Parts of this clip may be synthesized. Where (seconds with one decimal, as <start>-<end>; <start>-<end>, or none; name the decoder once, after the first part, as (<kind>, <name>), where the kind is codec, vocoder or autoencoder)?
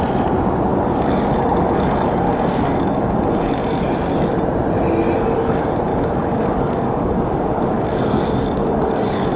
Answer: 0.7-3.9 (codec, DAC); 5.9-9.4